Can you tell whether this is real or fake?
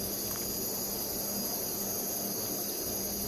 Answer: real